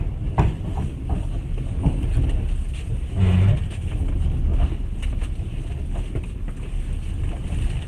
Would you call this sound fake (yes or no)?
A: no